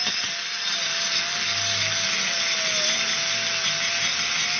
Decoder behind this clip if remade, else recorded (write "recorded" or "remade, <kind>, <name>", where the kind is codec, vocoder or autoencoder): recorded